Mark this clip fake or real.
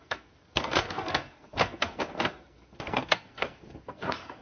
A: fake